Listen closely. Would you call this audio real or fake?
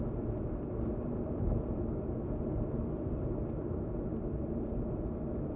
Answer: fake